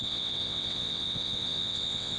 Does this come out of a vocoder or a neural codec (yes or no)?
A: yes